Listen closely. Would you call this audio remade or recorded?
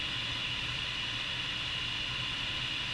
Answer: recorded